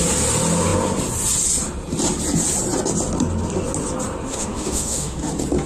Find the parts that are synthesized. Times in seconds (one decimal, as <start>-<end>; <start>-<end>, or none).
4.3-5.3